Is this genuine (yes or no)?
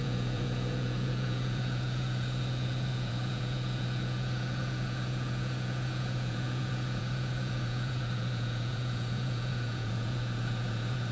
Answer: no